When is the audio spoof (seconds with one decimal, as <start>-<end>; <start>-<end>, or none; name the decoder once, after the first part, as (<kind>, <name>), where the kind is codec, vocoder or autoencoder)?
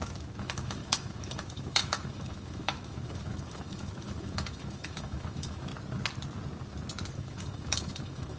0.0-5.7 (autoencoder, DAC-VAE); 7.1-8.4